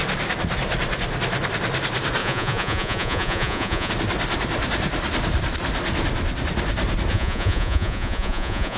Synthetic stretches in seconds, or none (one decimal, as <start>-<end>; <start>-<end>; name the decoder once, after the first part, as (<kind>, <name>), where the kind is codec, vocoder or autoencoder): 2.2-3.9 (vocoder, Vocos); 7.1-8.8